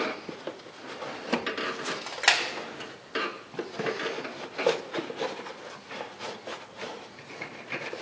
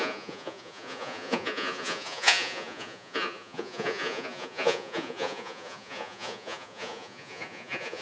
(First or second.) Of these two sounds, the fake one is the second